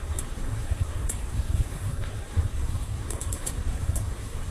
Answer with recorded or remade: remade